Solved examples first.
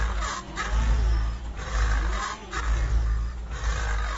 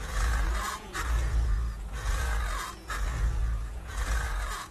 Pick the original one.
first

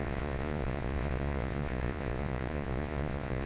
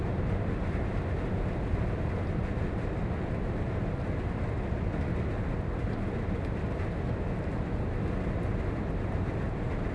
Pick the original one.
second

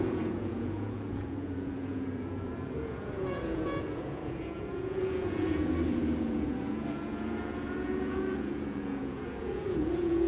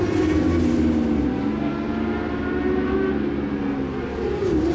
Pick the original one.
second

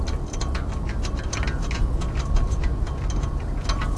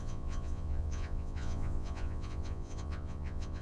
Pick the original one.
first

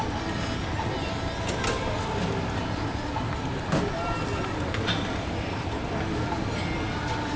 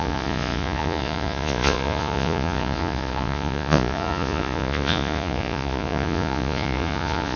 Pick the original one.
first